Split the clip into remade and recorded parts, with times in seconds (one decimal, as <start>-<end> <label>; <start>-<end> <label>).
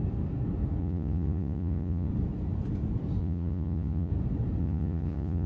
0.0-0.8 recorded; 0.8-2.1 remade; 2.1-3.2 recorded; 3.2-4.1 remade; 4.1-4.6 recorded; 4.6-5.5 remade